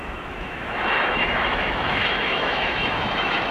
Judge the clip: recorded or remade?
remade